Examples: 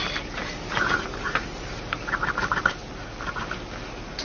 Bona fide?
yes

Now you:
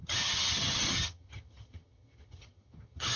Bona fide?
no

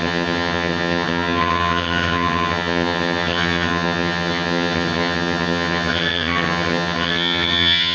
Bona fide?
no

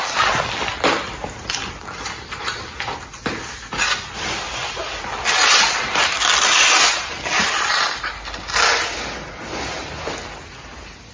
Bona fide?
yes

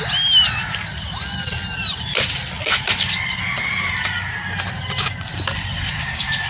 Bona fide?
yes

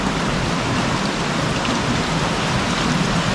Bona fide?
yes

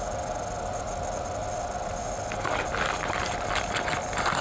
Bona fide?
yes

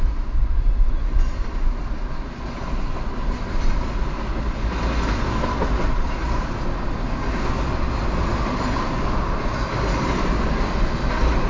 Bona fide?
yes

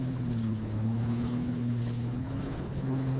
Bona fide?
no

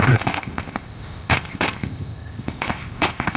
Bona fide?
no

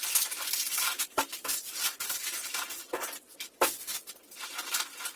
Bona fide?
yes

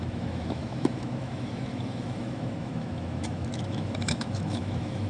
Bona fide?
no